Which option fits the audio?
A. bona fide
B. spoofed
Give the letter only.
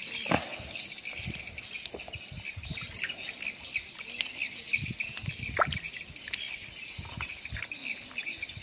A